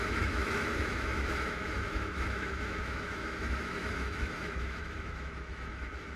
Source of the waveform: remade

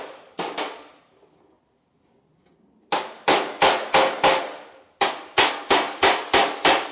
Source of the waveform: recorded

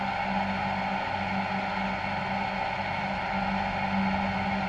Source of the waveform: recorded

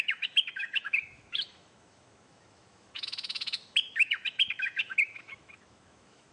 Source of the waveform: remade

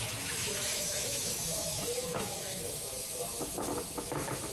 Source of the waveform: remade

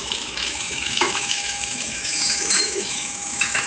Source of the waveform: remade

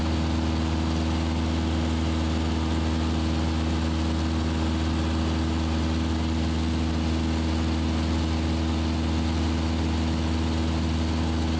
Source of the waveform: recorded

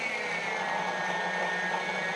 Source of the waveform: recorded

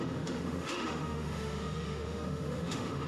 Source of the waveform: remade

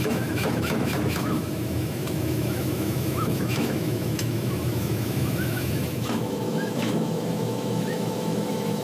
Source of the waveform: remade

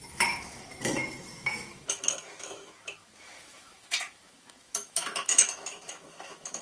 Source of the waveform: remade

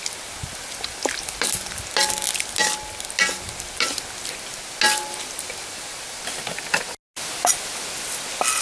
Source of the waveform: recorded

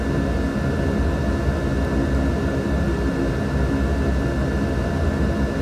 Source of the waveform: recorded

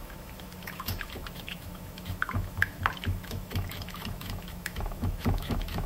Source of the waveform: remade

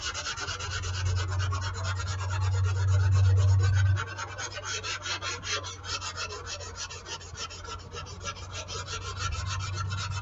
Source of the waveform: recorded